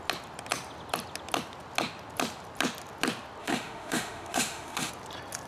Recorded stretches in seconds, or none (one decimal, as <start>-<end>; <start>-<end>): 0.0-3.4; 4.9-5.5